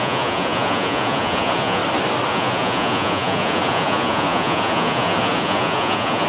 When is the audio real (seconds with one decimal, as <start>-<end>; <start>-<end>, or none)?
1.8-2.3